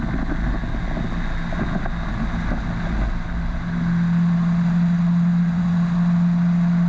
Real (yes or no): yes